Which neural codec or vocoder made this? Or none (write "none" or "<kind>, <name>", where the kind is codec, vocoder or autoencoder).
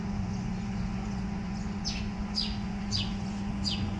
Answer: vocoder, Vocos